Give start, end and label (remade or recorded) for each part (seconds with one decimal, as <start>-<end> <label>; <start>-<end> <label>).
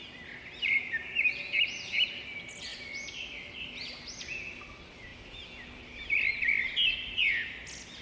0.0-8.0 recorded